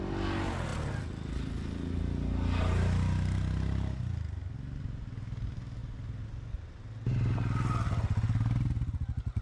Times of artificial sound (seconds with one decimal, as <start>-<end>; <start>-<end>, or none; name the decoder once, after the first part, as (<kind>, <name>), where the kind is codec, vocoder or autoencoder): none